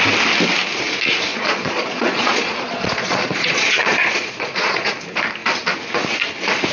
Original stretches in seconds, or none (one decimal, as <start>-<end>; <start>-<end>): 0.0-1.3; 4.9-6.7